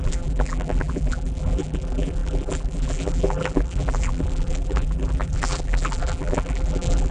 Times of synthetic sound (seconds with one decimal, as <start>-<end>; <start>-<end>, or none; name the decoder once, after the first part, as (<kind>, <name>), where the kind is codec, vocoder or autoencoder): 0.0-7.1 (vocoder, BigVGAN v2)